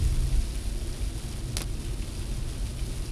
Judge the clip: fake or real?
real